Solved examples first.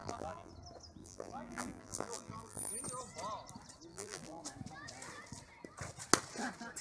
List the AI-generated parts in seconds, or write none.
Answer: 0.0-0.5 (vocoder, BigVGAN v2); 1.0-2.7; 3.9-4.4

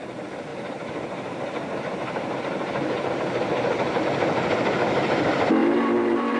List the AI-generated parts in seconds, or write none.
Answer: 0.5-4.0 (vocoder, BigVGAN v2); 5.6-6.4

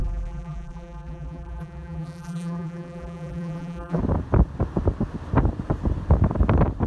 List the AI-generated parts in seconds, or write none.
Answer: 0.0-4.0 (vocoder, BigVGAN v2)

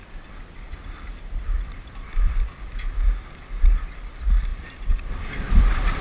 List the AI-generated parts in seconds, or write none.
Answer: 0.0-6.0 (vocoder, BigVGAN v2)

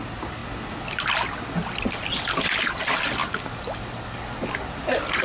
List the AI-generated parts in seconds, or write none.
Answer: 0.0-0.4 (vocoder, BigVGAN v2); 2.6-3.2; 4.7-5.2

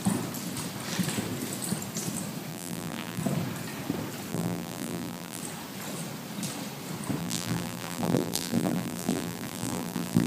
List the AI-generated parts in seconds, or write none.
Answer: 2.5-3.2 (vocoder, BigVGAN v2); 4.3-5.4; 7.2-10.3